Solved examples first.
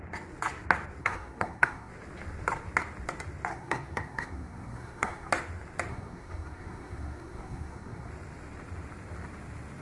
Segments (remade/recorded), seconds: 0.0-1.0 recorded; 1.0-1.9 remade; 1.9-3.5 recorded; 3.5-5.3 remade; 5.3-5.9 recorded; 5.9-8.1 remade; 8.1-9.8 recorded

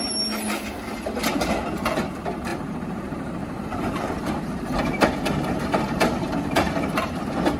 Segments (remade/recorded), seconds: 0.0-2.5 recorded; 2.5-6.9 remade; 6.9-7.6 recorded

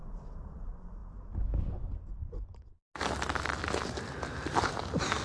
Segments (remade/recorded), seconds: 0.0-0.6 remade; 0.6-5.2 recorded

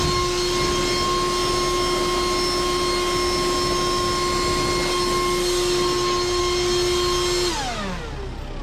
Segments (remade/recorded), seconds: 0.0-8.6 recorded

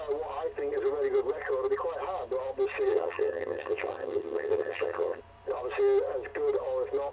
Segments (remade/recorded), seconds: 0.0-2.9 recorded; 2.9-5.2 remade; 5.2-7.1 recorded

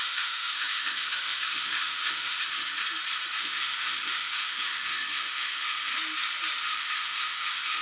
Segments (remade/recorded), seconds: 0.0-2.8 remade; 2.8-3.4 recorded; 3.4-5.9 remade; 5.9-6.6 recorded; 6.6-7.8 remade